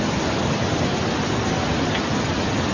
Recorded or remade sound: recorded